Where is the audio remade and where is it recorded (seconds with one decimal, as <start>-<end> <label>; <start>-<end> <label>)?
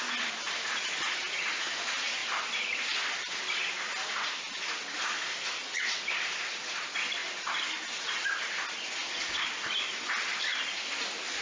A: 0.0-11.4 recorded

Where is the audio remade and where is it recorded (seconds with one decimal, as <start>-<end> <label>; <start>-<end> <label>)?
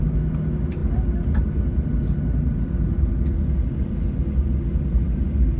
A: 0.0-5.6 recorded